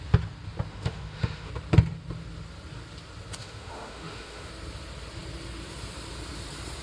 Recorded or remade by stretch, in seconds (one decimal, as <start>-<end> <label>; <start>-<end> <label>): 0.0-0.7 recorded; 0.7-1.5 remade; 1.5-3.4 recorded; 3.4-4.5 remade; 4.5-6.8 recorded